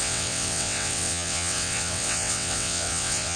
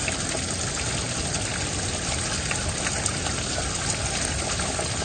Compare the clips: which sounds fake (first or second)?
first